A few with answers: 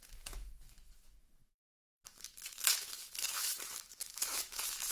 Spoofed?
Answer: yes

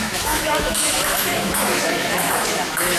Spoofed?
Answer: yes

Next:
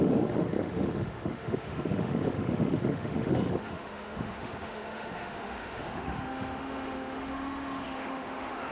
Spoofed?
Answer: yes